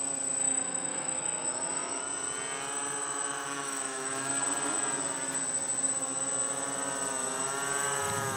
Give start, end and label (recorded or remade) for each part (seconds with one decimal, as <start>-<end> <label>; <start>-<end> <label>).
0.0-0.4 recorded; 0.4-2.0 remade; 2.0-3.0 recorded; 3.0-4.3 remade; 4.3-8.4 recorded